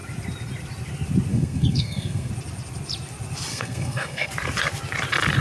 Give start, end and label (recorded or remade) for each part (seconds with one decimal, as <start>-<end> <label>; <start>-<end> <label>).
0.0-1.3 recorded; 1.3-2.3 remade; 2.3-3.5 recorded; 3.5-4.3 remade; 4.3-5.4 recorded